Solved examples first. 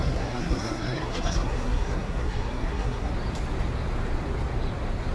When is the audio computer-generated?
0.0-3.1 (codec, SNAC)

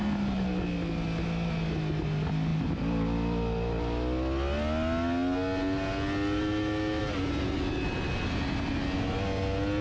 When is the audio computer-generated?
none